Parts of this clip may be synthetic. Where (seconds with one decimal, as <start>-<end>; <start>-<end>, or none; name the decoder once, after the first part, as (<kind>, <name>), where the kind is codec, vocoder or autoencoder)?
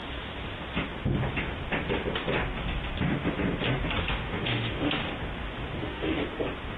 4.0-5.0 (autoencoder, DAC-VAE); 5.8-6.2